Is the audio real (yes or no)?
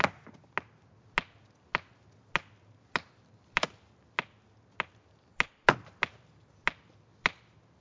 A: yes